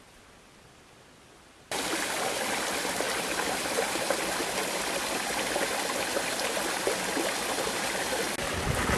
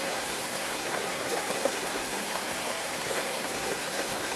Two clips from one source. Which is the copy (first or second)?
second